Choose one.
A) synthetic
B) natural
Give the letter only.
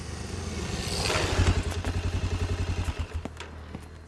B